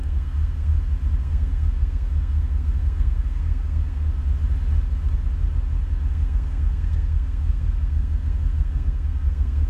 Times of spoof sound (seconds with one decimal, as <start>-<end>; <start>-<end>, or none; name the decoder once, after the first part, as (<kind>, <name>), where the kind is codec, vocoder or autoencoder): 0.0-0.7 (codec, SNAC); 1.2-4.1; 6.1-9.7

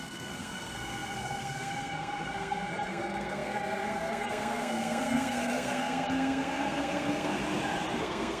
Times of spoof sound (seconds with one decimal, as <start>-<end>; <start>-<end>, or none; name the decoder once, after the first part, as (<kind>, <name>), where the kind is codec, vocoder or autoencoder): 0.0-7.4 (codec, SNAC); 8.0-8.4

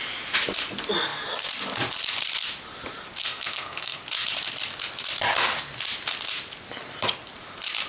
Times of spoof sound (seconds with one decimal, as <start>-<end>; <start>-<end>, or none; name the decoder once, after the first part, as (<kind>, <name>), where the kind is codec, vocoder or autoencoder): 3.2-4.0 (codec, SNAC)